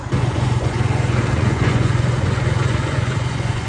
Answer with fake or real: fake